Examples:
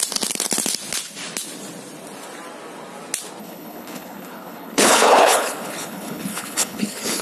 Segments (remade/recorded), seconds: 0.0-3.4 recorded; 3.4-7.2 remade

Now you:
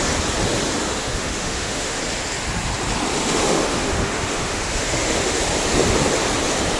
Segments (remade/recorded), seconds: 0.0-0.8 recorded; 0.8-2.0 remade; 2.0-3.2 recorded; 3.2-5.4 remade; 5.4-6.8 recorded

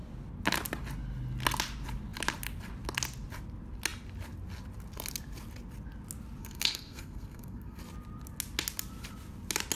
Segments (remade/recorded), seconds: 0.0-6.4 recorded; 6.4-7.8 remade; 7.8-9.8 recorded

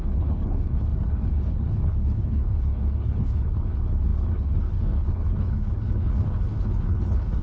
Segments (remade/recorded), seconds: 0.0-7.4 remade

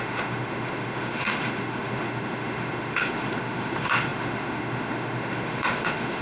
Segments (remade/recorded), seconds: 0.0-6.2 remade

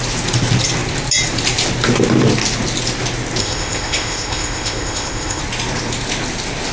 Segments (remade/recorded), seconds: 0.0-3.4 recorded; 3.4-5.4 remade; 5.4-6.7 recorded